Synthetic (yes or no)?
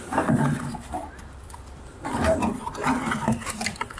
yes